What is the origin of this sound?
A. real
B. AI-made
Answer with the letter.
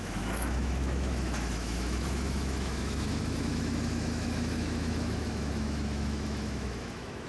B